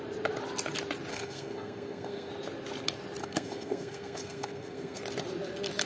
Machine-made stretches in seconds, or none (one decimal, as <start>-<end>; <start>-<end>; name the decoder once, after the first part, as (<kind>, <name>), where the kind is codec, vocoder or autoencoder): 1.1-2.3 (codec, SNAC); 3.2-5.0